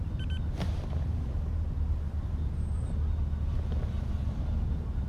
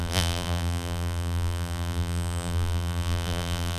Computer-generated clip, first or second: second